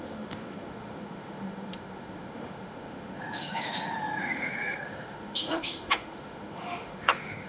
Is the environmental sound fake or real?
fake